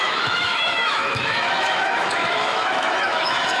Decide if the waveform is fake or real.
fake